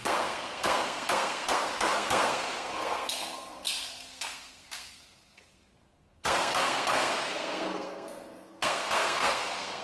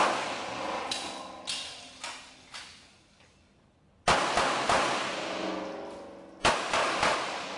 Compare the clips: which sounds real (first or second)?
second